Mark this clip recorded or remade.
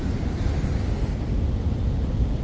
recorded